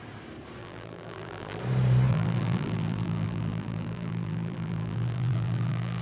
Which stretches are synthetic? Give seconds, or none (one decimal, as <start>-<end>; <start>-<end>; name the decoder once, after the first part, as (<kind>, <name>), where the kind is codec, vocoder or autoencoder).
0.6-1.6 (vocoder, BigVGAN v2); 2.1-6.0